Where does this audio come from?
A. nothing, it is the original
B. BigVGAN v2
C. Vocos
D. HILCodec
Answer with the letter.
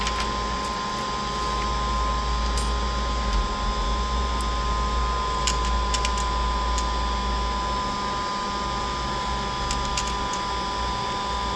A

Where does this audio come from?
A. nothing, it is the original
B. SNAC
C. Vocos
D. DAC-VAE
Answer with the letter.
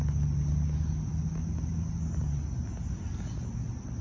A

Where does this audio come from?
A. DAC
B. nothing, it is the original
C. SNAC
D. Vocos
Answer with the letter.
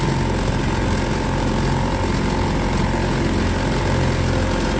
B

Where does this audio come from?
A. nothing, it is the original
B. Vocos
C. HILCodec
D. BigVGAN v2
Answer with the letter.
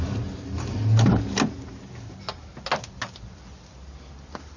A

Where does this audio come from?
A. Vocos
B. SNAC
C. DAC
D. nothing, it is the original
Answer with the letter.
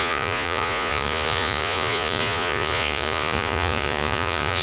A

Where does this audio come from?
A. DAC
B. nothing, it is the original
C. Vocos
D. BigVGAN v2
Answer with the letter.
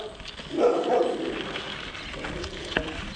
B